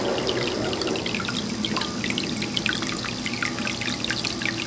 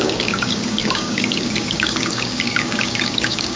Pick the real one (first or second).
first